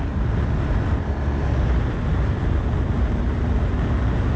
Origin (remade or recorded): recorded